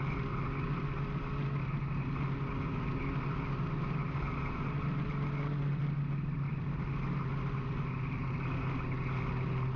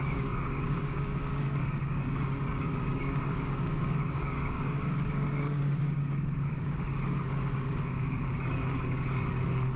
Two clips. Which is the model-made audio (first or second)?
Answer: second